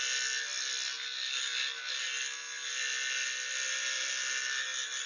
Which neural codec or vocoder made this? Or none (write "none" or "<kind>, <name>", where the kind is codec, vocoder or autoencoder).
none